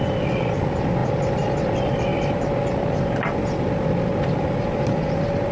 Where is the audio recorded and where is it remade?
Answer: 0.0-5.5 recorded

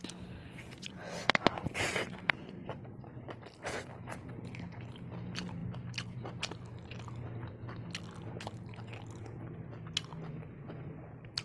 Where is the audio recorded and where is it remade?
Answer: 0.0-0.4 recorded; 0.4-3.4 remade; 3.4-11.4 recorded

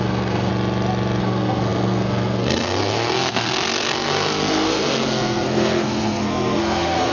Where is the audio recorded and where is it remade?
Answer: 0.0-0.5 remade; 0.5-1.2 recorded; 1.2-7.1 remade

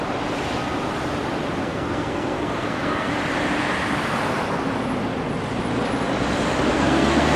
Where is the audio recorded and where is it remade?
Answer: 0.0-1.6 recorded; 1.6-3.1 remade; 3.1-6.7 recorded; 6.7-7.4 remade

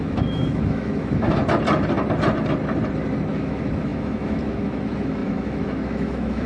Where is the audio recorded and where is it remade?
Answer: 0.0-1.4 remade; 1.4-3.3 recorded; 3.3-6.5 remade

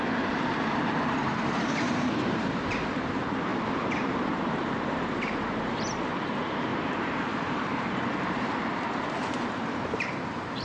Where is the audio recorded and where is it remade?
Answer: 0.0-10.6 remade

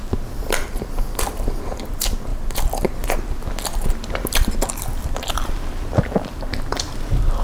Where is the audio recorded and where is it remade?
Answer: 0.0-7.4 remade

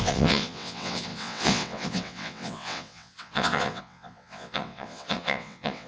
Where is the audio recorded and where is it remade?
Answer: 0.0-5.9 remade